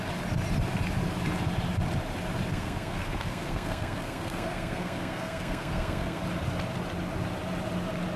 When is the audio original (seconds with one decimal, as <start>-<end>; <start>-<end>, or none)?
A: 0.0-2.5; 6.2-8.2